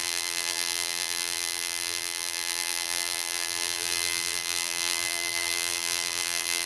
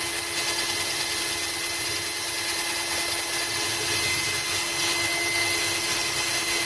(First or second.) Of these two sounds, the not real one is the first